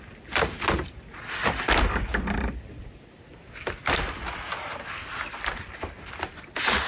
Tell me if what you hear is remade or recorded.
recorded